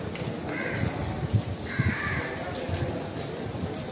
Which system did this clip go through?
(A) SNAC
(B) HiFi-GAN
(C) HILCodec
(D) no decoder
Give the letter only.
D